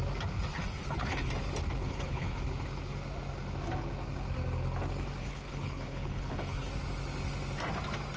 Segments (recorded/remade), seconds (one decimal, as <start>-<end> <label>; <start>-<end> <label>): 0.0-0.5 recorded; 0.5-1.3 remade; 1.3-1.8 recorded; 1.8-2.4 remade; 2.4-5.2 recorded; 5.2-6.7 remade; 6.7-8.2 recorded